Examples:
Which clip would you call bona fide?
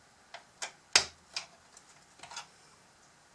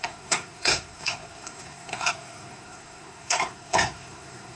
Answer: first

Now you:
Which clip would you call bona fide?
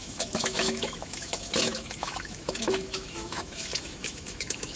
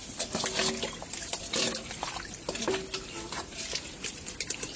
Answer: second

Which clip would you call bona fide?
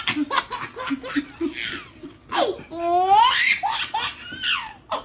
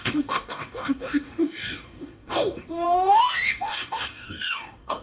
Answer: first